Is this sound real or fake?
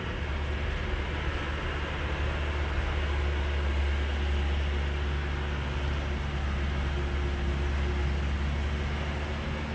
real